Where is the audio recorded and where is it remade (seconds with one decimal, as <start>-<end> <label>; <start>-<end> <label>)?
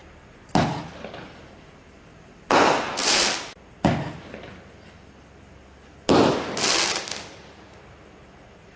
0.0-8.8 recorded